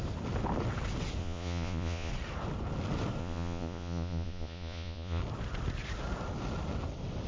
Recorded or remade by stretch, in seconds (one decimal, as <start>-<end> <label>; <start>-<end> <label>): 0.0-1.2 recorded; 1.2-2.1 remade; 2.1-3.2 recorded; 3.2-5.2 remade; 5.2-7.3 recorded